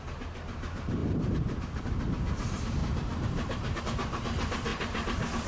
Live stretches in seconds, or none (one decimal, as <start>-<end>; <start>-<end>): 0.0-1.0; 1.8-2.8; 3.8-5.5